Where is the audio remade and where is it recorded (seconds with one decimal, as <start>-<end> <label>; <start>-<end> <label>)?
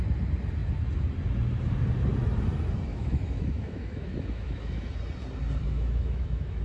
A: 0.0-2.9 recorded; 2.9-4.9 remade; 4.9-5.6 recorded; 5.6-6.6 remade